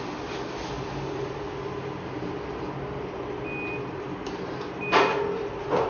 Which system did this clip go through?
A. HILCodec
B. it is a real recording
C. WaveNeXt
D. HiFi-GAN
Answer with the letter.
B